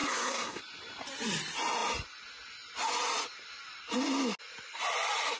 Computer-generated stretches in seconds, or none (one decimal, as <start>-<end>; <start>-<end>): 0.0-0.6

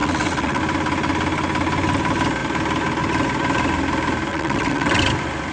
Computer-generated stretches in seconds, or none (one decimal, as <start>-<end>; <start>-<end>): 0.0-0.6; 4.3-5.0